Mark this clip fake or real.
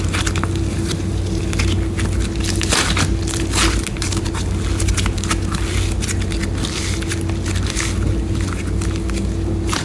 real